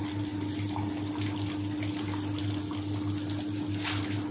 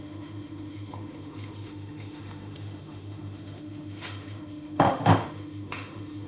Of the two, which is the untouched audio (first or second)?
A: first